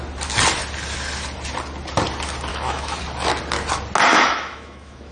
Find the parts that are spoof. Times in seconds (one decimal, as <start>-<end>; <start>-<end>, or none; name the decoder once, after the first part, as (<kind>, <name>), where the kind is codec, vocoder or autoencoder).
2.5-3.0 (autoencoder, DAC-VAE); 4.1-5.1